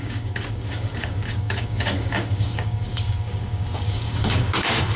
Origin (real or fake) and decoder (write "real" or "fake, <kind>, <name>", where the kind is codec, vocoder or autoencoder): fake, codec, DAC